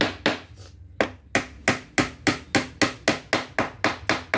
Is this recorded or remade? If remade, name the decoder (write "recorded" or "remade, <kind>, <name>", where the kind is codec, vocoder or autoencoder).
recorded